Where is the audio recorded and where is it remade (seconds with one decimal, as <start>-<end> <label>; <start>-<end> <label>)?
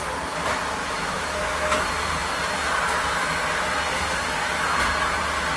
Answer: 0.0-0.8 recorded; 0.8-1.8 remade; 1.8-5.6 recorded